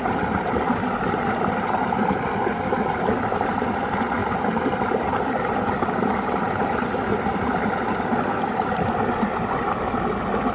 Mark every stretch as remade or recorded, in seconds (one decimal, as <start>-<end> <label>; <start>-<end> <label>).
0.0-10.5 recorded